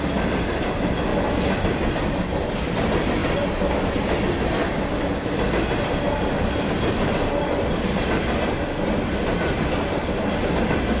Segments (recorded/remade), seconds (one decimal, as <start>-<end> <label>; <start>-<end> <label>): 0.0-11.0 recorded